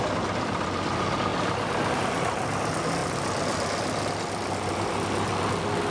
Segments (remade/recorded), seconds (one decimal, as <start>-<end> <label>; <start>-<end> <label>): 0.0-5.9 recorded